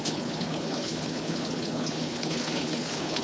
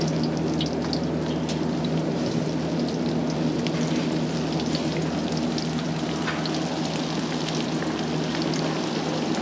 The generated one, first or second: first